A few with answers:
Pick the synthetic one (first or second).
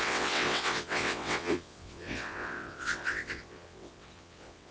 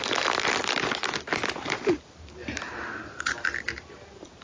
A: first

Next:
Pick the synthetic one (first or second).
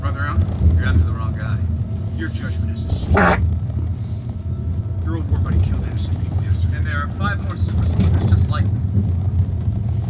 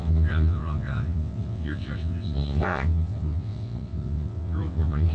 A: second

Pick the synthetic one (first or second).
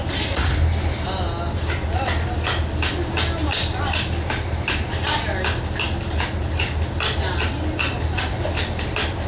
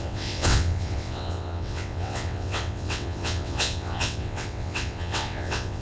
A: second